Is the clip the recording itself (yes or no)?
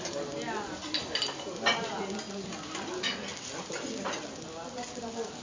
yes